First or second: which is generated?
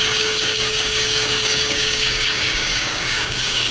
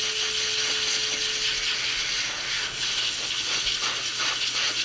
first